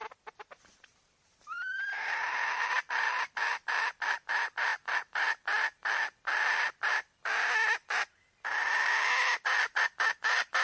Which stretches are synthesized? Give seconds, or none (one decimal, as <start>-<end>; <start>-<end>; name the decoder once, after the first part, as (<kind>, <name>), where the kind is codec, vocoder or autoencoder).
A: none